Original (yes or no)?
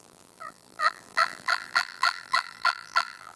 no